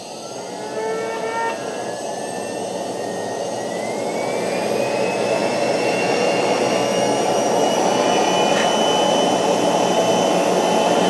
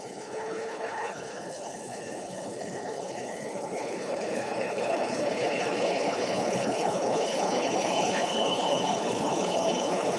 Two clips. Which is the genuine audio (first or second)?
first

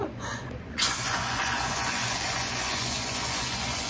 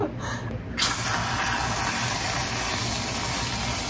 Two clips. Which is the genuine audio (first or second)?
second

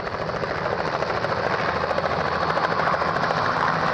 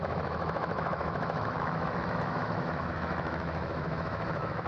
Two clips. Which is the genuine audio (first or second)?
first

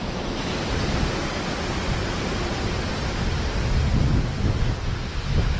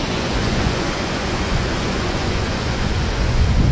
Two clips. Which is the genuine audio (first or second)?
first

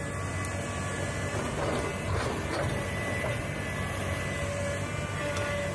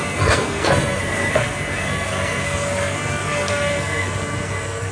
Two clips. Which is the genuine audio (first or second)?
first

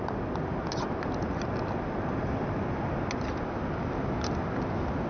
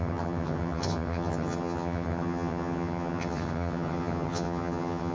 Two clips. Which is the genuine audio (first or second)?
first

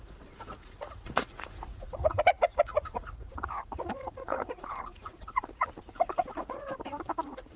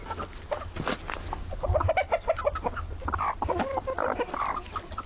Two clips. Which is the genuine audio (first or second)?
second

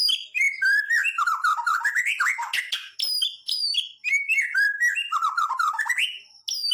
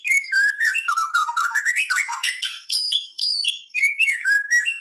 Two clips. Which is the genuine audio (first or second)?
first